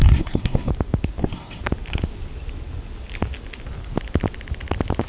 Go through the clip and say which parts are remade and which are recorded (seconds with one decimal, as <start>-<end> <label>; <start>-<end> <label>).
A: 0.0-0.7 remade; 0.7-1.2 recorded; 1.2-1.6 remade; 1.6-5.1 recorded